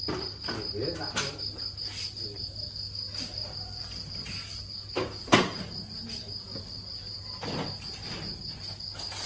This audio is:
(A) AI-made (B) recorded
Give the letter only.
B